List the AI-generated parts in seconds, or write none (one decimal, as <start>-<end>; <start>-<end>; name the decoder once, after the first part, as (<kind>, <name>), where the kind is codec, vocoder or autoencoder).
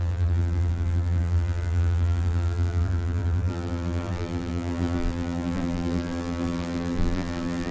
0.0-7.7 (vocoder, BigVGAN v2)